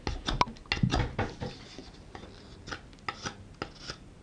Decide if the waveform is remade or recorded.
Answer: recorded